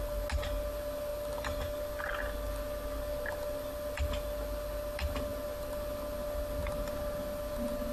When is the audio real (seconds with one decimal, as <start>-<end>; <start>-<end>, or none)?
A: 0.0-7.9

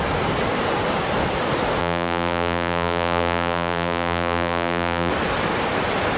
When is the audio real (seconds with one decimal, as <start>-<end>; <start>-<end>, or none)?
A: 0.0-1.8; 5.1-6.2